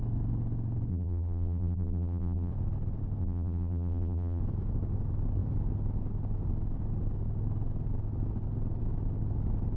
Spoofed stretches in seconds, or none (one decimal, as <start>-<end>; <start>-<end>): 0.9-2.5; 3.2-4.4